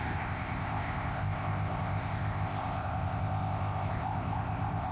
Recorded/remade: remade